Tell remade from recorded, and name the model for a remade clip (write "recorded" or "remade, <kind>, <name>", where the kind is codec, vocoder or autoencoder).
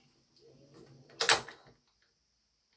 recorded